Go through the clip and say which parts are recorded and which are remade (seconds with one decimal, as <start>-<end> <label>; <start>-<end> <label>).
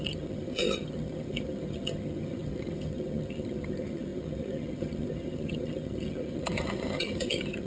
0.0-7.7 remade